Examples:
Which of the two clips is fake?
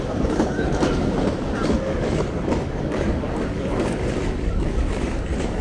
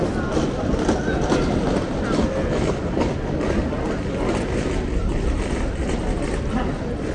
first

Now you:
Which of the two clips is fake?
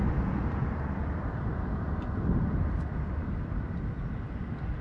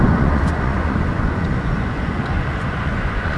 second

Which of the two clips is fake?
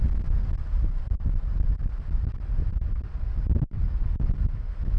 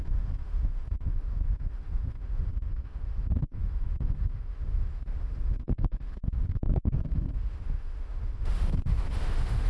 second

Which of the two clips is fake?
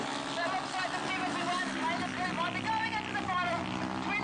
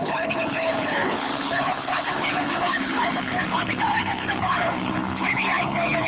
second